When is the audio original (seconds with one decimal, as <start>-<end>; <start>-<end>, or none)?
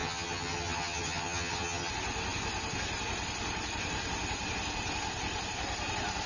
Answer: 1.9-6.3